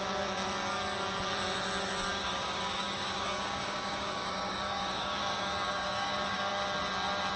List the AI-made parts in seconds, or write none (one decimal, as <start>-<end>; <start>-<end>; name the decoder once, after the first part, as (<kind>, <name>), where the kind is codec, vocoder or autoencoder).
2.1-6.5 (codec, DAC)